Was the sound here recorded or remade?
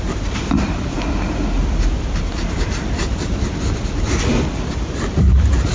recorded